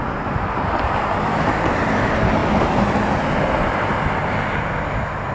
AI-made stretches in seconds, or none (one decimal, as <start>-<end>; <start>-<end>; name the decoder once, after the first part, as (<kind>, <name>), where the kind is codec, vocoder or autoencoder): 2.4-2.9 (vocoder, BigVGAN v2)